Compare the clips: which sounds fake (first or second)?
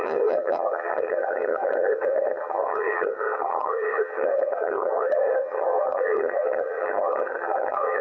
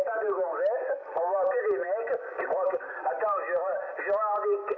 first